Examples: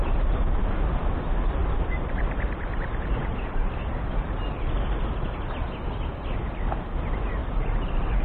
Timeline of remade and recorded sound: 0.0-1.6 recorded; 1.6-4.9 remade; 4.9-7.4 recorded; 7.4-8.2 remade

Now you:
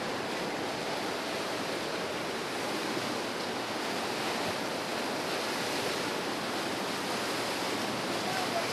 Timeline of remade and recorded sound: 0.0-4.9 remade; 4.9-7.8 recorded; 7.8-8.7 remade

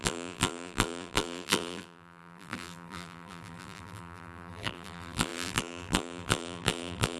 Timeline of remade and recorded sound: 0.0-7.2 remade

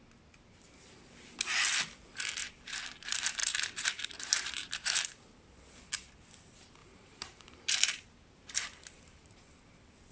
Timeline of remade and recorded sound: 0.0-3.4 recorded; 3.4-5.5 remade; 5.5-6.8 recorded; 6.8-9.4 remade; 9.4-10.1 recorded

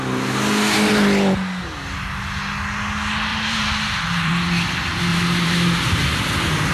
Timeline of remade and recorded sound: 0.0-3.3 recorded; 3.3-4.3 remade; 4.3-5.1 recorded; 5.1-6.2 remade; 6.2-6.7 recorded